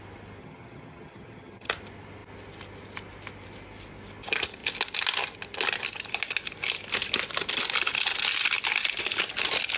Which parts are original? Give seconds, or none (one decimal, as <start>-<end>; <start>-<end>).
0.0-0.4; 1.7-9.8

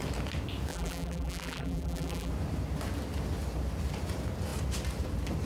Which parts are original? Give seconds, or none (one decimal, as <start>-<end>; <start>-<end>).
0.0-0.7; 2.3-5.5

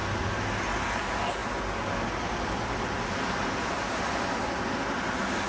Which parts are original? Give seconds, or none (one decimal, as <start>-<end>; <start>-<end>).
0.0-5.5

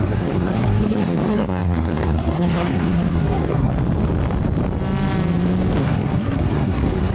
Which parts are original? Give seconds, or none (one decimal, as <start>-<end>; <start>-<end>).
3.7-5.8